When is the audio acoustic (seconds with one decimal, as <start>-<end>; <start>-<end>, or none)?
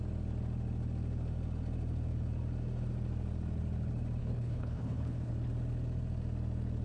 0.0-4.2; 5.3-6.8